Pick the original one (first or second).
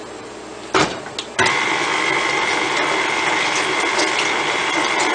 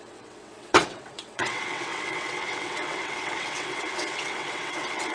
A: first